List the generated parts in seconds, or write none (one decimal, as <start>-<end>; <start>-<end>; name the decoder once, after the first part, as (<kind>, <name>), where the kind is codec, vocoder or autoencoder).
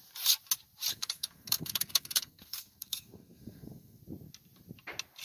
0.9-4.0 (codec, SNAC)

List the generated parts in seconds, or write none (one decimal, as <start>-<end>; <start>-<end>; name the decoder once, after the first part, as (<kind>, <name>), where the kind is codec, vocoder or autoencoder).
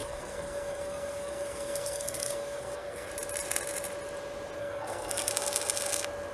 0.0-3.1 (codec, SNAC); 4.6-5.3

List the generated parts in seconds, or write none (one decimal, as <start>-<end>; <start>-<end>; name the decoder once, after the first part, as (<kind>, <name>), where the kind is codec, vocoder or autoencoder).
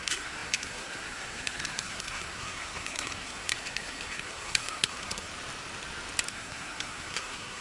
0.0-5.3 (codec, SNAC); 6.3-7.6